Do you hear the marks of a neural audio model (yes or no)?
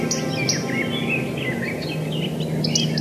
no